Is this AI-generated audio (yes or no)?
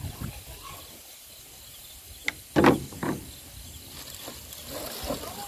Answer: no